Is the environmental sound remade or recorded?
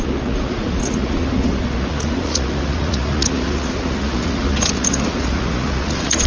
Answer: remade